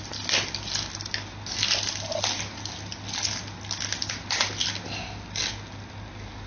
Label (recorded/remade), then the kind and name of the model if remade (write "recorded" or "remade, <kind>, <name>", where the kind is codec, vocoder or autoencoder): recorded